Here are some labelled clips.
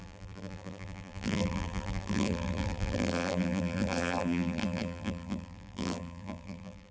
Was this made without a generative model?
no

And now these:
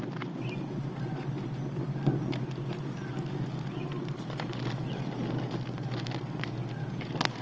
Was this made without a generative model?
yes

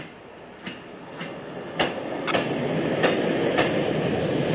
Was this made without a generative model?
yes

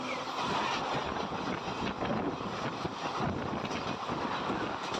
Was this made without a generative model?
yes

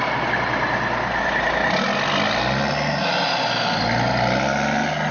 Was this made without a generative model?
yes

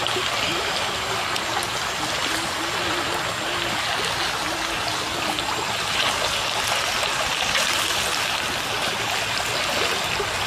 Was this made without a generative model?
yes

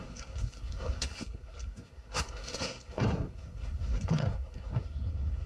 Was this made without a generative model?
no